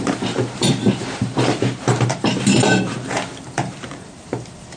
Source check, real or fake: fake